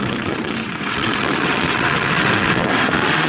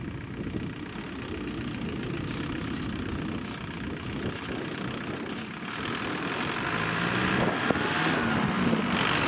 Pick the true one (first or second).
second